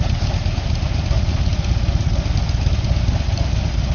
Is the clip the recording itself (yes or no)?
yes